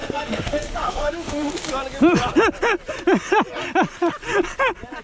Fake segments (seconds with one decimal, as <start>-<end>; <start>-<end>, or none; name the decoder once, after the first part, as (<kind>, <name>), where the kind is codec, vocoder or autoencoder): 0.0-1.5 (autoencoder, DAC-VAE)